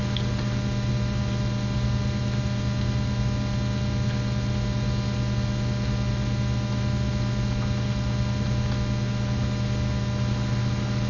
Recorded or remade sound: recorded